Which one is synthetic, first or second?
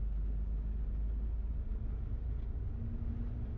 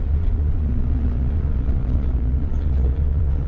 second